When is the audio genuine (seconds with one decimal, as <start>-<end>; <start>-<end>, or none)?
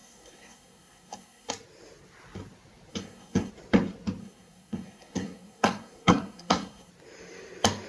1.5-2.9; 3.5-4.2; 6.9-7.9